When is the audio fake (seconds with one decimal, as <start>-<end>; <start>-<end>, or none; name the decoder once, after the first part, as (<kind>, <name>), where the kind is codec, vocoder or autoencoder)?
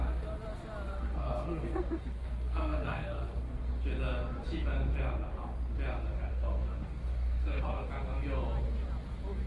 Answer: 0.9-3.7 (codec, SNAC); 6.3-7.9